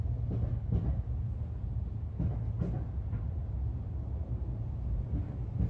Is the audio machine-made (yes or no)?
no